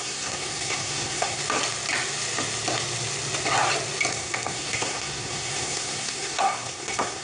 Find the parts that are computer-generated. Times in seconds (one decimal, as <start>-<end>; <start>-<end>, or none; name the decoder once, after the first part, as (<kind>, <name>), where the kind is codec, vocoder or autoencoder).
0.0-1.4 (codec, SNAC); 4.1-7.2